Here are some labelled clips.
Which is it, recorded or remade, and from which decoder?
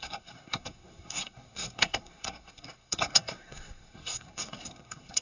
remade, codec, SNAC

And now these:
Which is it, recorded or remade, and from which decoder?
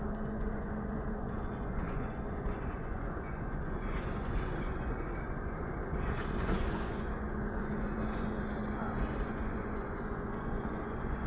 remade, vocoder, Vocos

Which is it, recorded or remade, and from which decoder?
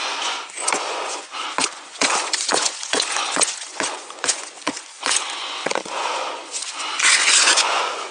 remade, vocoder, Vocos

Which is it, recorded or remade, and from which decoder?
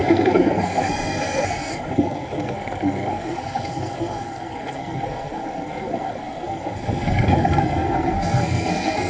remade, codec, SNAC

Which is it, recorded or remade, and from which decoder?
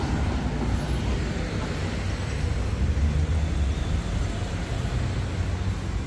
recorded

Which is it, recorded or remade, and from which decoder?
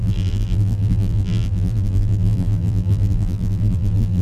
remade, vocoder, BigVGAN v2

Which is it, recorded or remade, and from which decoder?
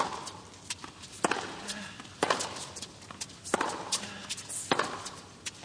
recorded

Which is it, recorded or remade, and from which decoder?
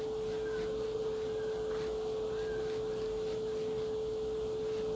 recorded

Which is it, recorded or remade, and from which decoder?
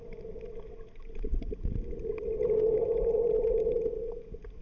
recorded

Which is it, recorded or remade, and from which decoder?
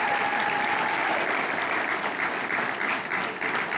recorded